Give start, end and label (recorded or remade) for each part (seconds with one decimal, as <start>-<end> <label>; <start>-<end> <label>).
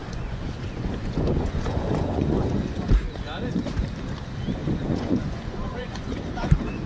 0.0-3.8 remade; 3.8-4.6 recorded; 4.6-6.9 remade